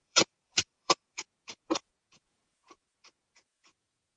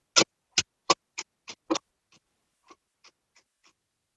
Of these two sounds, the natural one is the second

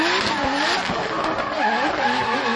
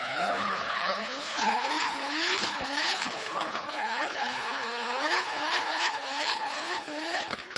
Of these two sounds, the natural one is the first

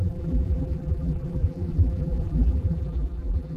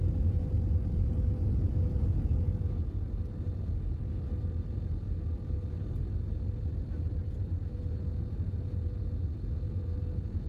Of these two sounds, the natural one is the second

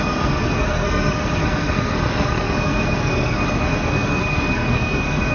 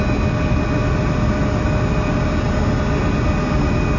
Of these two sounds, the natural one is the second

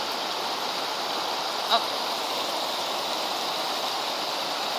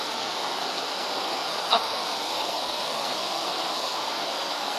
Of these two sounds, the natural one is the first